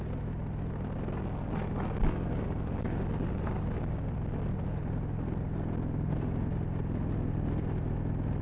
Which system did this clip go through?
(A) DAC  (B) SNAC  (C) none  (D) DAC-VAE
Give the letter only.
C